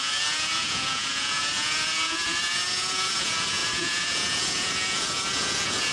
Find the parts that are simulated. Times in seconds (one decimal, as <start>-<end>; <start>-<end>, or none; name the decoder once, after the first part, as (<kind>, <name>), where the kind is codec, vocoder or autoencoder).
0.0-5.9 (vocoder, Vocos)